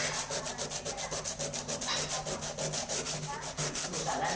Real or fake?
real